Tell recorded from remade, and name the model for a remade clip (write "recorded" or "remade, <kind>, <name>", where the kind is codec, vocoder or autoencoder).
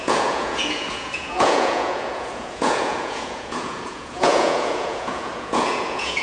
remade, vocoder, Vocos